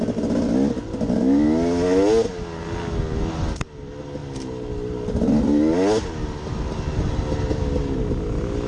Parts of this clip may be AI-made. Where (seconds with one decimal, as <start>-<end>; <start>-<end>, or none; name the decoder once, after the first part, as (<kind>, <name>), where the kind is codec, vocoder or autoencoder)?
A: none